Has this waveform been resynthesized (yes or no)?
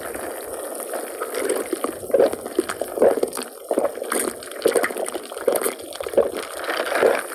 no